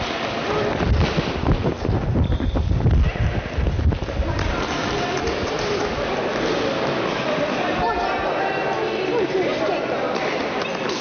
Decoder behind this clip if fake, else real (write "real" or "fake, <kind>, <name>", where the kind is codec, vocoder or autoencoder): real